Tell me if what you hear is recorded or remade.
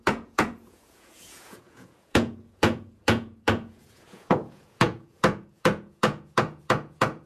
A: remade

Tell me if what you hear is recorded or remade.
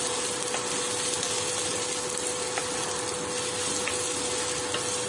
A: recorded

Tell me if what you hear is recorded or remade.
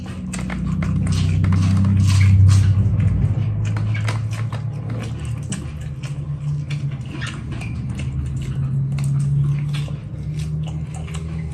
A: recorded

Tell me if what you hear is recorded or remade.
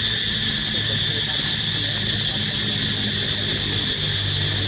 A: recorded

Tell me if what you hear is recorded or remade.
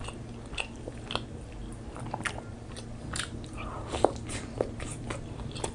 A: recorded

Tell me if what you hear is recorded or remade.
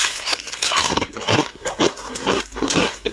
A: remade